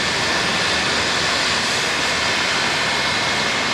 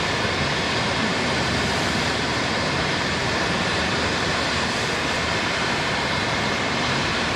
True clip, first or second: first